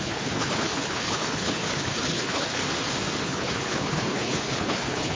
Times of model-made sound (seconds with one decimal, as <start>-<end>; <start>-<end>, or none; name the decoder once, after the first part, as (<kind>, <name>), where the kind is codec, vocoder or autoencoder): 0.0-2.6 (codec, HILCodec); 3.2-5.1